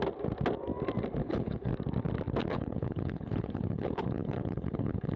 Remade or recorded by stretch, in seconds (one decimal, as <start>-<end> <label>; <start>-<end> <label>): 0.0-1.2 recorded; 1.2-1.7 remade; 1.7-2.5 recorded; 2.5-5.2 remade